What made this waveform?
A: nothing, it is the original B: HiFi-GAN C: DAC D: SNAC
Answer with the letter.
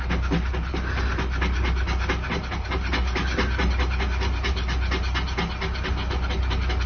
A